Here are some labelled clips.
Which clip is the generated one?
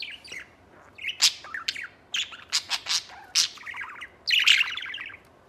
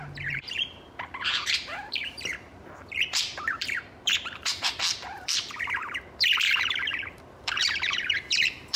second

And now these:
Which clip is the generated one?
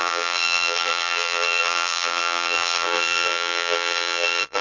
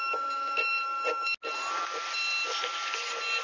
first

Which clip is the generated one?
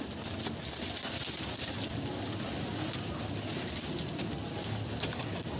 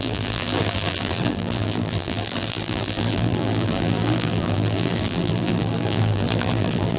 second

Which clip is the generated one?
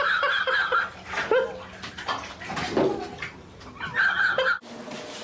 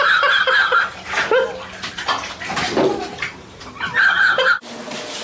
second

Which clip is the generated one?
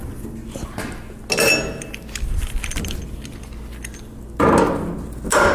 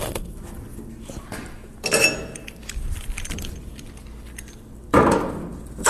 second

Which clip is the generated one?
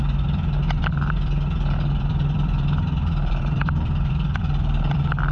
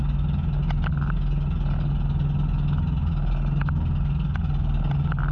first